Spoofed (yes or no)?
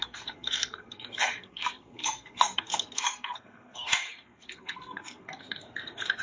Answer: yes